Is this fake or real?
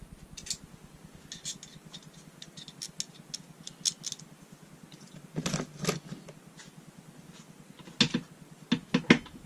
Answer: real